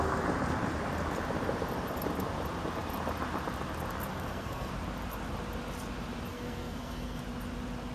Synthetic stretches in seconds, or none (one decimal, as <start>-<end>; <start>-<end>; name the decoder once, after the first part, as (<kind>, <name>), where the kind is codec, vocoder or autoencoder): 4.1-4.7 (codec, SNAC); 6.3-7.2